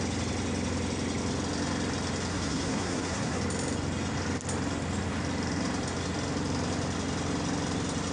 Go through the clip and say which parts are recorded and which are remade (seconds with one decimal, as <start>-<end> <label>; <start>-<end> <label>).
0.0-2.3 recorded; 2.3-3.4 remade; 3.4-8.1 recorded

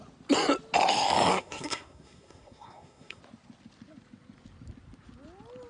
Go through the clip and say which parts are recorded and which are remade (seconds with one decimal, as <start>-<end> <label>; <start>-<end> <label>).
0.0-1.3 recorded; 1.3-3.2 remade; 3.2-5.7 recorded

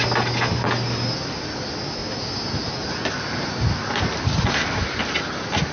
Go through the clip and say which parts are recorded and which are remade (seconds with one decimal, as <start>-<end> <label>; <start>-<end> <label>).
0.0-5.7 recorded

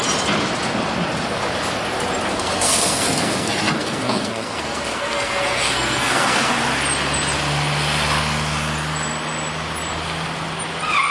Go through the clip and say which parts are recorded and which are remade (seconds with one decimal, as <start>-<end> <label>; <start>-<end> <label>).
0.0-2.3 recorded; 2.3-6.5 remade; 6.5-11.1 recorded